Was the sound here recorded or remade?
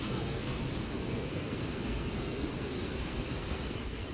remade